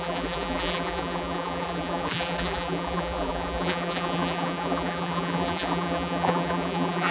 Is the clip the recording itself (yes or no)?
no